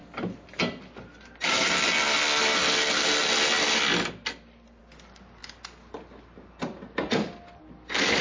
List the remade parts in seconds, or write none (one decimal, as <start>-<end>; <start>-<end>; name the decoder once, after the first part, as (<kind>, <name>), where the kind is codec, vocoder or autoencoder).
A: none